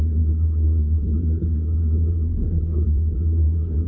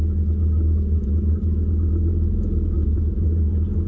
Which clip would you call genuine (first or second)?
second